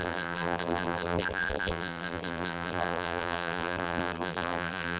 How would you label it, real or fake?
fake